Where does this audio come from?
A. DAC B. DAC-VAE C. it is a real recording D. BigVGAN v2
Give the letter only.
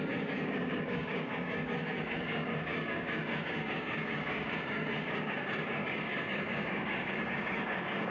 A